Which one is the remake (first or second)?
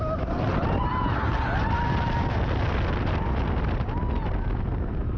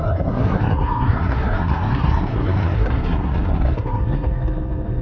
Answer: second